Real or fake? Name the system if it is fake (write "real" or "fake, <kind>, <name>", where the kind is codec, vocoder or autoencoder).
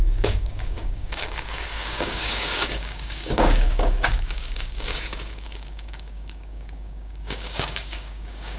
fake, codec, DAC